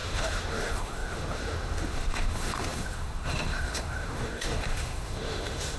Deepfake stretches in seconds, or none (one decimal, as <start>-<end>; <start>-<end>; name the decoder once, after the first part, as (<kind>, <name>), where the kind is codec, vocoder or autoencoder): 0.0-5.8 (autoencoder, DAC-VAE)